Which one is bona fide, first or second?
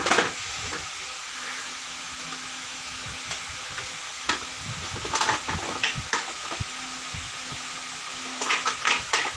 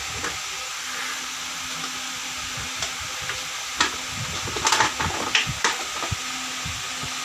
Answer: second